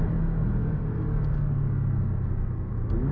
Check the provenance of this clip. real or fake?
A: real